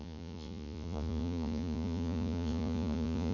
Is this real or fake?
fake